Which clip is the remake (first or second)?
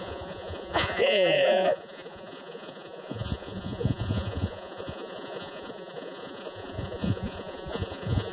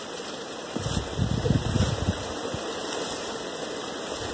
first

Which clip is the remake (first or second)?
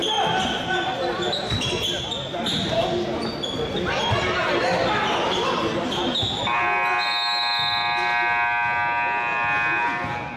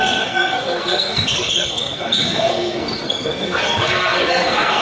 second